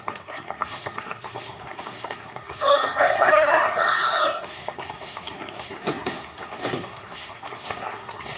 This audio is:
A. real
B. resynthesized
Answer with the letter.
B